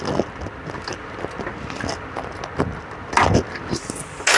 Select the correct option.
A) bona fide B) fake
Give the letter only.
A